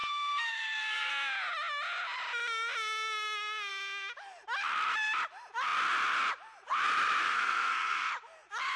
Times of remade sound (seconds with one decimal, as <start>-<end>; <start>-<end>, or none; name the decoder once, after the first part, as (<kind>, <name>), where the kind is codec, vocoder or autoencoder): 0.0-1.1 (codec, SNAC); 7.2-8.1